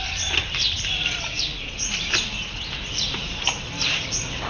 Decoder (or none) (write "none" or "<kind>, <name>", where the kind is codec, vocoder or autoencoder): vocoder, BigVGAN v2